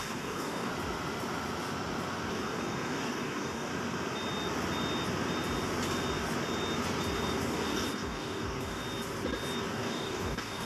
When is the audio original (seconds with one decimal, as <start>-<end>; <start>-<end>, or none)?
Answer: 0.7-2.3; 3.7-7.4; 8.8-9.7